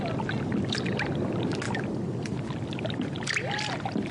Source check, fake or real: real